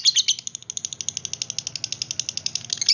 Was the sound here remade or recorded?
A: recorded